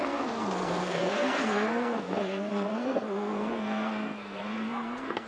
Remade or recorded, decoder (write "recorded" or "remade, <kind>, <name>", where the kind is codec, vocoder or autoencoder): remade, codec, SNAC